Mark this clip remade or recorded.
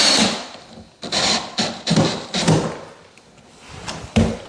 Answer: recorded